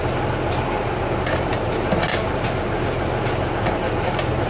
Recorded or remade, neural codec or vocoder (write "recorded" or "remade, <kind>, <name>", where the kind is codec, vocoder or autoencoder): recorded